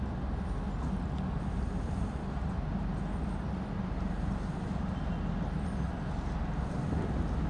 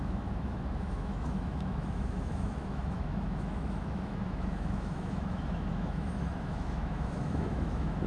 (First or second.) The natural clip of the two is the first